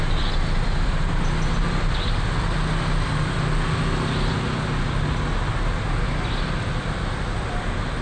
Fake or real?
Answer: real